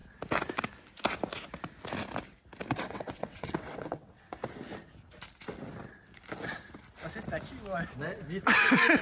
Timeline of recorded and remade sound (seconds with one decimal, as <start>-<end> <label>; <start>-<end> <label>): 0.0-2.7 recorded; 2.7-4.4 remade; 4.4-9.0 recorded